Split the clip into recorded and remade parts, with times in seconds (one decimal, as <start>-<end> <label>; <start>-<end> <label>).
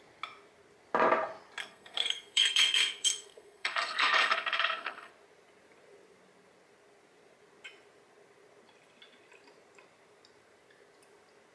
0.0-1.6 recorded; 1.6-5.1 remade; 5.1-11.5 recorded